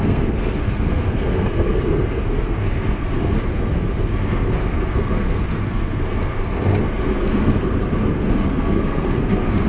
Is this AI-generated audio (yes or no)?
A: yes